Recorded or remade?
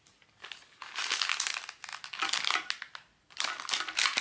recorded